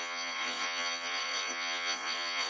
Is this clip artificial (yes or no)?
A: yes